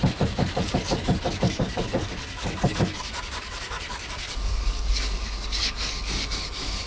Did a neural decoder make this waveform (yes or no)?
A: yes